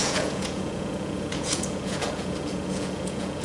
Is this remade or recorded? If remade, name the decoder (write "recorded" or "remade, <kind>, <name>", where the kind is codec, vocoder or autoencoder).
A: remade, vocoder, Vocos